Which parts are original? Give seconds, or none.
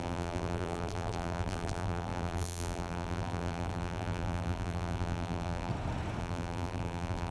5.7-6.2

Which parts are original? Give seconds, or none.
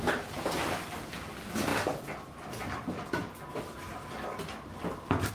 0.0-5.3